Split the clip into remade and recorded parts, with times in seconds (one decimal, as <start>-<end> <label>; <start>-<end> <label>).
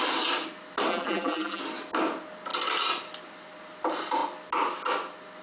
0.0-0.9 recorded; 0.9-1.6 remade; 1.6-5.4 recorded